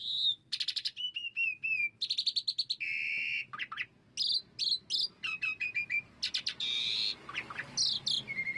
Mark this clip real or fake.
real